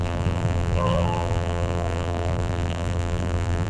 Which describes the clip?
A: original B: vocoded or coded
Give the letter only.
B